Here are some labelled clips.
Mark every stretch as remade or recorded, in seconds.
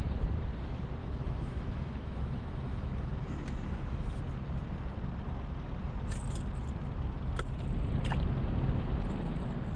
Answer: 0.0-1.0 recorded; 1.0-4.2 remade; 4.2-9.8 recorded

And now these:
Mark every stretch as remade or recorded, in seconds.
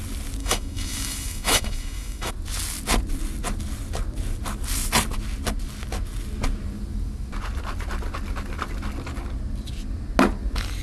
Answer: 0.0-0.4 recorded; 0.4-2.3 remade; 2.3-10.8 recorded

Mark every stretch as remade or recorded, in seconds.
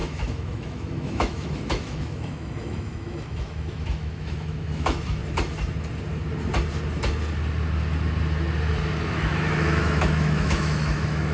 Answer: 0.0-5.2 remade; 5.2-9.1 recorded; 9.1-11.3 remade